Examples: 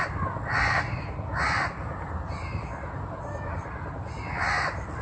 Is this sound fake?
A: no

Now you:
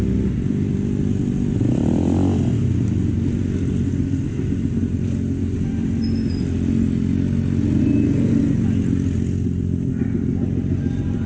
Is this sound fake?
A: no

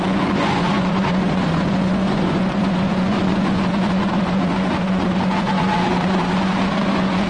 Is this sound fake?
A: yes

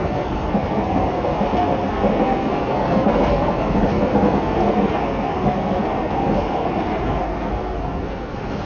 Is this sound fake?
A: yes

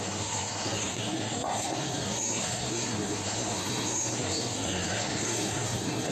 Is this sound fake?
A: yes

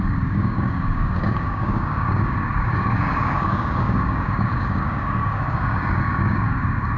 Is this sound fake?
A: yes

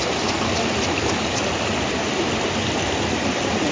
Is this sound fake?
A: no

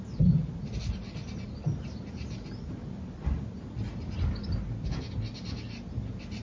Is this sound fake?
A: no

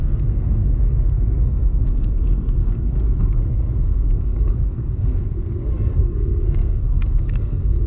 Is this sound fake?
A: yes